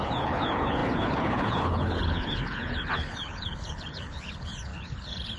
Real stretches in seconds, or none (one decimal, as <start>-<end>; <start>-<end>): none